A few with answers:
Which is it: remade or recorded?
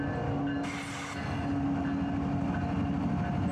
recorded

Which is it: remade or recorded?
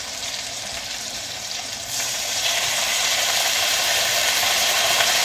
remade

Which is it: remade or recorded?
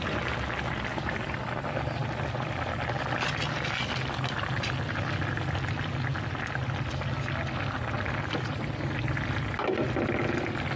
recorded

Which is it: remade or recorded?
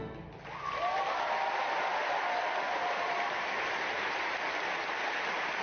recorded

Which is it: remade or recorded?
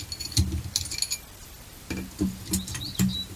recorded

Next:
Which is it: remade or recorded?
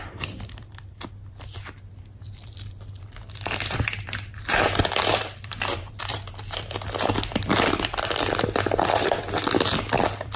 remade